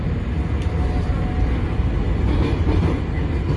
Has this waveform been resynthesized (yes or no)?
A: no